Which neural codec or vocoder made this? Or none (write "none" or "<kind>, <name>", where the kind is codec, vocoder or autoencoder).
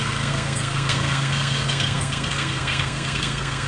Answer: codec, SNAC